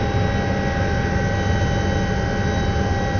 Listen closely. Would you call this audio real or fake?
real